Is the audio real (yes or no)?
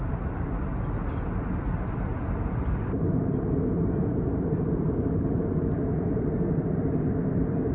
no